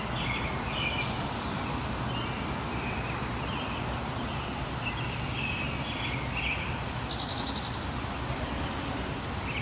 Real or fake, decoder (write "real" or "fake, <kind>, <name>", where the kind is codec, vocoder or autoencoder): real